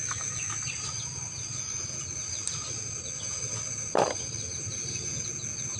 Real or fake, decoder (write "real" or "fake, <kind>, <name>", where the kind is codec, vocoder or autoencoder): real